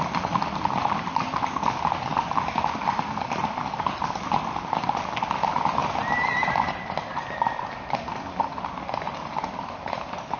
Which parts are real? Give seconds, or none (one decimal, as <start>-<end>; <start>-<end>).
0.0-10.4